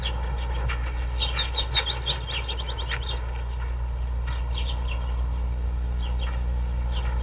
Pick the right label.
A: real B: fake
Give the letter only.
A